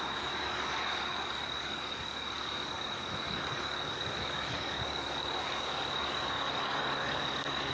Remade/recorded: remade